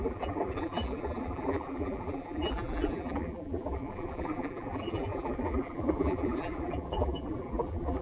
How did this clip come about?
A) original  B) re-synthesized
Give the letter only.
B